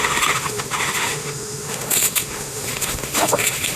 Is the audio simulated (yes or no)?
yes